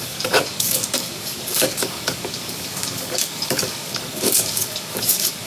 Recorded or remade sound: remade